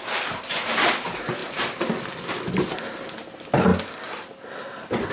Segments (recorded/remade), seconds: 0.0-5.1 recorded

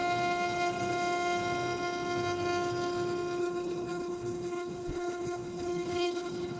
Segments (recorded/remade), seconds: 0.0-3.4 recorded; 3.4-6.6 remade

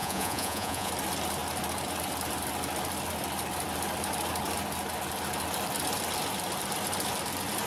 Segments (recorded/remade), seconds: 0.0-0.9 remade; 0.9-7.7 recorded